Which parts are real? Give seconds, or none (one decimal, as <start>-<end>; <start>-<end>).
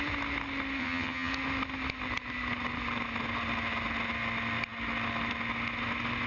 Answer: 0.0-0.8; 1.3-6.3